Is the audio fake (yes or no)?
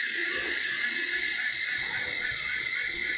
yes